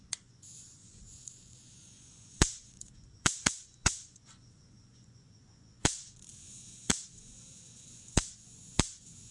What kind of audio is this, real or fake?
fake